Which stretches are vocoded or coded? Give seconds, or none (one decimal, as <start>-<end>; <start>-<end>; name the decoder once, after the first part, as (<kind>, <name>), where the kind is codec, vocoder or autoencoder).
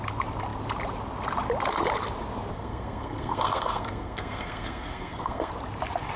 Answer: 2.5-5.5 (codec, SNAC)